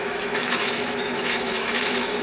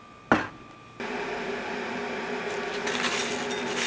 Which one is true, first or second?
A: second